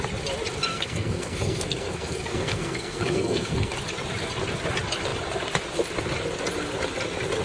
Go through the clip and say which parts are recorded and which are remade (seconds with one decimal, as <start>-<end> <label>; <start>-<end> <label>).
0.0-0.7 recorded; 0.7-3.7 remade; 3.7-7.4 recorded